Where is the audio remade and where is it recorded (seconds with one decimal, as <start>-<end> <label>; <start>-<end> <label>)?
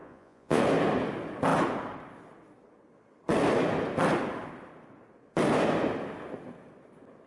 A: 0.0-0.6 remade; 0.6-7.3 recorded